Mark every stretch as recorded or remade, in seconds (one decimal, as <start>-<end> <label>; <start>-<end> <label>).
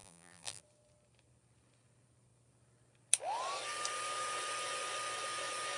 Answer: 0.0-0.6 remade; 0.6-5.8 recorded